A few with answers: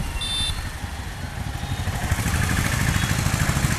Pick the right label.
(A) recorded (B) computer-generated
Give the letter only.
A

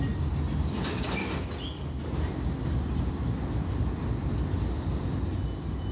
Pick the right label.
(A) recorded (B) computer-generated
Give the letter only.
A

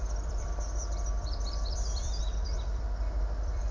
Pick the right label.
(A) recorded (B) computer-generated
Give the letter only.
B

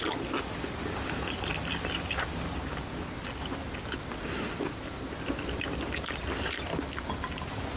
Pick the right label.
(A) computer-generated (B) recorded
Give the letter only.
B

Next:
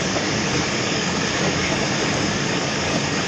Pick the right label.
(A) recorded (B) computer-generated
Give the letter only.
B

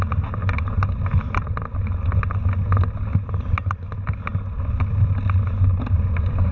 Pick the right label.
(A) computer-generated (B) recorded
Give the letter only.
B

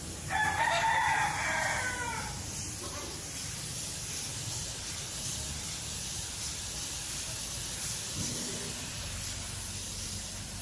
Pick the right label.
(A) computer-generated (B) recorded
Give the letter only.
B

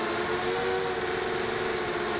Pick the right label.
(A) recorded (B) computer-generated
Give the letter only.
A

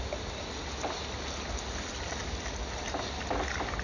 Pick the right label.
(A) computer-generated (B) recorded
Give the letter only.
B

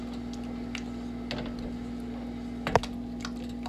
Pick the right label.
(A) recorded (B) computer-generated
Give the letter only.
A